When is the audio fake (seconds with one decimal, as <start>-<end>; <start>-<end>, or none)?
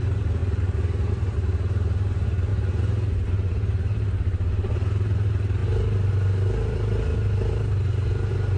none